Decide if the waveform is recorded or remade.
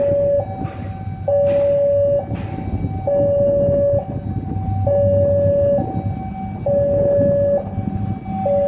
recorded